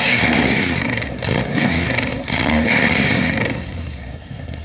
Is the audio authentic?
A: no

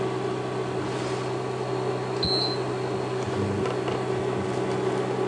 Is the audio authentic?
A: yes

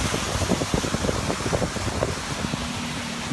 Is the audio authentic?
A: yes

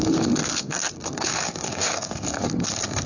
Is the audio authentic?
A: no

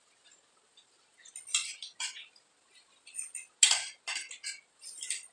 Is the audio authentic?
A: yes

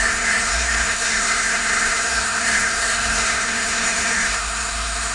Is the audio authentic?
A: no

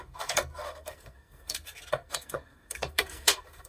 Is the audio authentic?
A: no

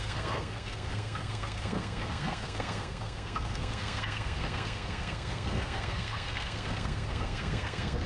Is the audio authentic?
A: no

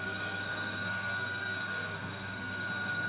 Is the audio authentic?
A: no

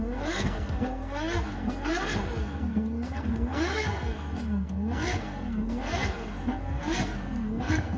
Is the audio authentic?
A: no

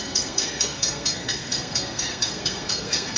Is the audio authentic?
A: no